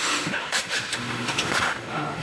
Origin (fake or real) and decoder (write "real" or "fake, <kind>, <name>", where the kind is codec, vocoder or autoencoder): fake, autoencoder, DAC-VAE